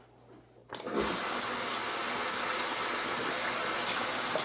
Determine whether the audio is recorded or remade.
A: recorded